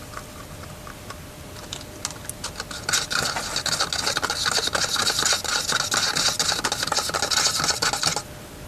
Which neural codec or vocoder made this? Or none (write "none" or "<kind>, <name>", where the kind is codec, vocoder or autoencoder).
none